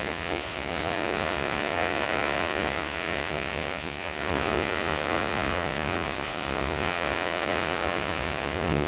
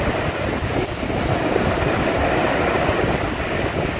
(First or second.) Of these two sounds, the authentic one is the second